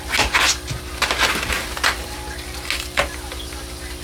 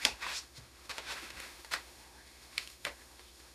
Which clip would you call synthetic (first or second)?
second